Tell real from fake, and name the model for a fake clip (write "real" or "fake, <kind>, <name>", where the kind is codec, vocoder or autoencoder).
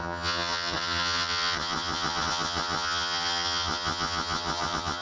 fake, vocoder, HiFi-GAN